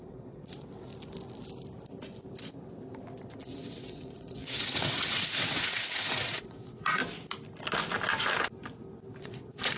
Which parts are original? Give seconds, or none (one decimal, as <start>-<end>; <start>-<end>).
0.9-3.4; 7.0-9.2